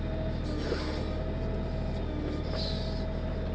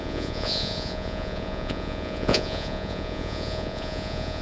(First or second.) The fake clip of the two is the second